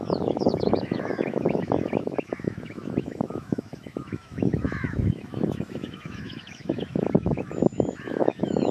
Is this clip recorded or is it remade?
remade